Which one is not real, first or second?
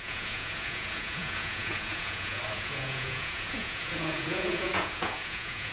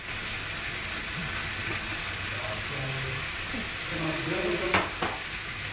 first